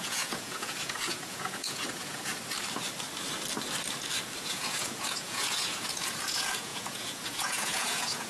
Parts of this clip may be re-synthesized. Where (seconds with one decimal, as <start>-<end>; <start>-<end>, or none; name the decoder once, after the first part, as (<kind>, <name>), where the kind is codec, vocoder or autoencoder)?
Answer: 0.0-2.3 (vocoder, Vocos); 4.4-8.3